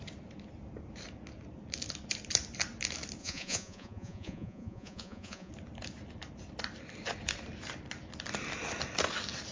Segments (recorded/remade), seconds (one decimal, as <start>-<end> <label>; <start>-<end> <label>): 0.0-3.2 recorded; 3.2-5.5 remade; 5.5-9.5 recorded